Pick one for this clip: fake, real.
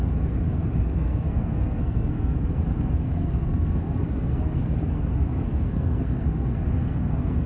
fake